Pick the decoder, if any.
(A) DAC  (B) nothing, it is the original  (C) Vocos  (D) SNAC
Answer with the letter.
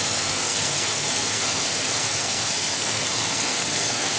D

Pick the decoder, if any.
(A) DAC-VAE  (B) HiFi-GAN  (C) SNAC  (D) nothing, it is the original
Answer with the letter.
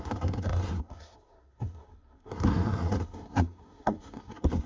C